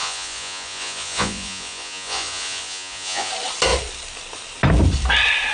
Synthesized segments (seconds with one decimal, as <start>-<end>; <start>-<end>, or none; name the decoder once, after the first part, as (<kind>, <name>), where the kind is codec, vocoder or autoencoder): 0.0-3.3 (vocoder, Vocos)